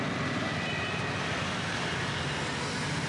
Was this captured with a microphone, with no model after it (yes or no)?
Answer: yes